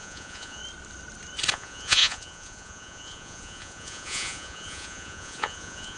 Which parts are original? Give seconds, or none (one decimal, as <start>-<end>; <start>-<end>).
0.6-1.5